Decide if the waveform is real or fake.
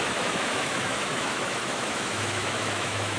fake